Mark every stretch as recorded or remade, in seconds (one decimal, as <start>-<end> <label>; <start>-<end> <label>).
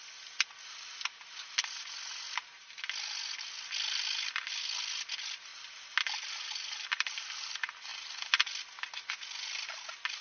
0.0-10.2 recorded